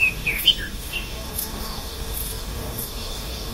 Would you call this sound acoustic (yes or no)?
no